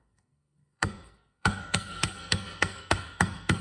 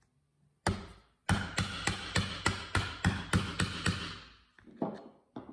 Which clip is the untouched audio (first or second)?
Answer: second